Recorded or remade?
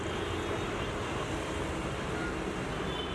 recorded